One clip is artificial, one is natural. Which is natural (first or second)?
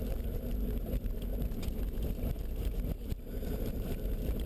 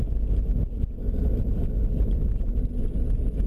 second